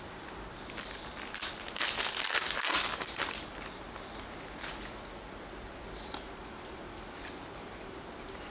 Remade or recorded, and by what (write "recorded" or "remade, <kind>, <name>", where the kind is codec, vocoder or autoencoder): recorded